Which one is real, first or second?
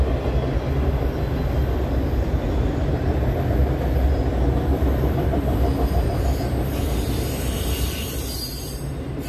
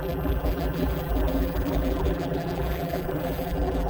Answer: first